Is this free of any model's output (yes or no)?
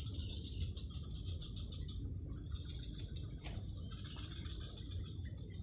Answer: no